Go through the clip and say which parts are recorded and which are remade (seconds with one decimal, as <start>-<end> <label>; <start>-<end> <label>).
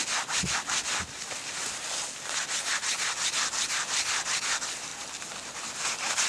0.0-6.3 recorded